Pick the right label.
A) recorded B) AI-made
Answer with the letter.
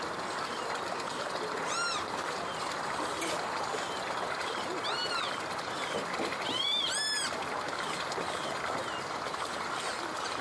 B